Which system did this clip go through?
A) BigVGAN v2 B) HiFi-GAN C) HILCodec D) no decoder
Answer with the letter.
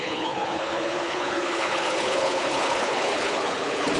C